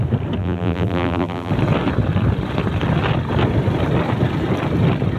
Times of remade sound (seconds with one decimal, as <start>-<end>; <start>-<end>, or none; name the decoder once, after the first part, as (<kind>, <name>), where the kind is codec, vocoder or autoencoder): 0.4-1.5 (vocoder, BigVGAN v2)